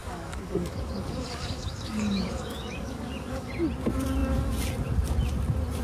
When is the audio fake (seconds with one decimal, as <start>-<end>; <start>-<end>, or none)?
0.0-3.5